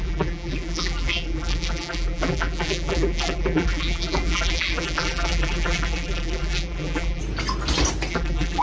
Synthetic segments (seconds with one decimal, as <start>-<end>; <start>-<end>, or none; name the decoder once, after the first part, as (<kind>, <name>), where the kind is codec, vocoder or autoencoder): 0.0-7.2 (vocoder, BigVGAN v2); 8.1-8.6